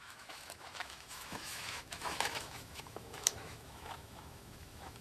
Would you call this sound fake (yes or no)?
yes